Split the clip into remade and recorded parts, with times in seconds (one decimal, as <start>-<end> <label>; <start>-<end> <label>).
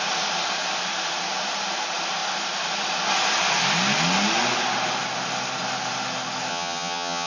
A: 0.0-6.5 recorded; 6.5-7.3 remade